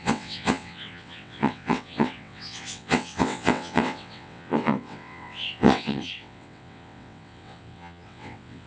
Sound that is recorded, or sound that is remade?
remade